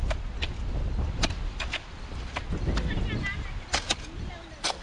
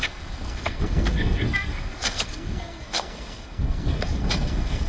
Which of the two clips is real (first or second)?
first